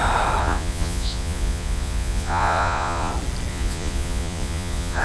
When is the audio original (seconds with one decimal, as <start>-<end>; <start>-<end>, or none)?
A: 0.0-0.4; 3.1-3.5